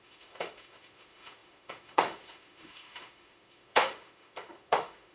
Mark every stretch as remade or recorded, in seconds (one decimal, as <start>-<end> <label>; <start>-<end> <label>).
0.0-5.1 remade